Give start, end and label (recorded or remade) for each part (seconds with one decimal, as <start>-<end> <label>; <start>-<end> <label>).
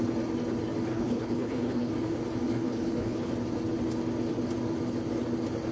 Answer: 0.0-0.9 recorded; 0.9-1.9 remade; 1.9-2.5 recorded; 2.5-3.3 remade; 3.3-5.7 recorded